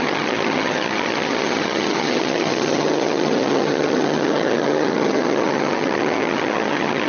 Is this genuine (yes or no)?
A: no